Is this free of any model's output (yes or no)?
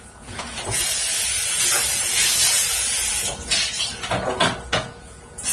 no